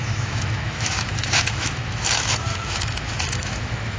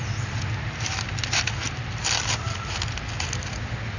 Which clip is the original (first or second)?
second